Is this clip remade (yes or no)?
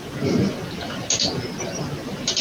yes